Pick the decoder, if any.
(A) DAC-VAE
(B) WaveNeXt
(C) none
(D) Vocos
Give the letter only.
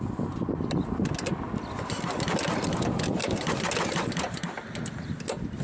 C